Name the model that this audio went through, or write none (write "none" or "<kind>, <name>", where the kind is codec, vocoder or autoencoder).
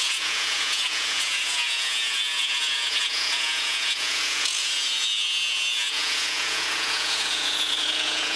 vocoder, Vocos